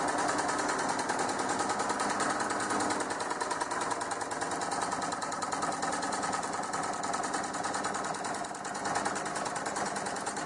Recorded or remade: recorded